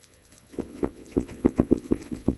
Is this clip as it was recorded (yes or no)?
no